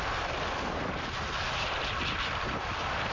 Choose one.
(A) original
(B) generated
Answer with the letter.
A